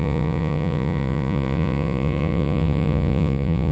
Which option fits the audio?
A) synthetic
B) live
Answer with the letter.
A